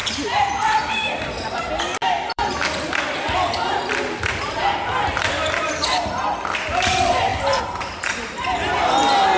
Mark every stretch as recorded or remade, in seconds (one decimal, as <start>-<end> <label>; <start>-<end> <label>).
0.0-1.2 remade; 1.2-2.0 recorded; 2.0-5.6 remade; 5.6-7.3 recorded; 7.3-8.0 remade; 8.0-9.4 recorded